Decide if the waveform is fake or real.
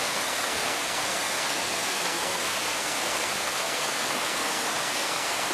fake